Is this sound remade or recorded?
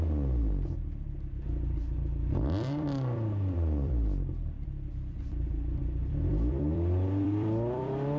remade